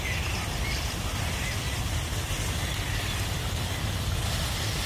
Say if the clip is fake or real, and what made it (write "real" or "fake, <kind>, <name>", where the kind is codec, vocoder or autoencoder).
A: fake, vocoder, BigVGAN v2